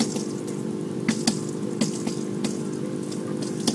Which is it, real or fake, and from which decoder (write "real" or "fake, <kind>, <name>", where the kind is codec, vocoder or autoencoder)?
real